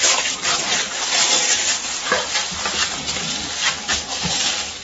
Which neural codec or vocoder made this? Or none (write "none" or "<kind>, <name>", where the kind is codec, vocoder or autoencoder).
vocoder, BigVGAN v2